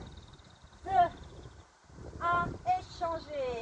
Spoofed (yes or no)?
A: yes